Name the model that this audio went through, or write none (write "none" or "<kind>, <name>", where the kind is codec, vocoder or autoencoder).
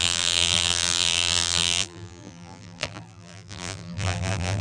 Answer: vocoder, BigVGAN v2